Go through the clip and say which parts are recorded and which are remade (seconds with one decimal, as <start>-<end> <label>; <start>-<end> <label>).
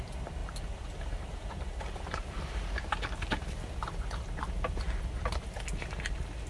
0.0-0.4 recorded; 0.4-3.5 remade; 3.5-6.5 recorded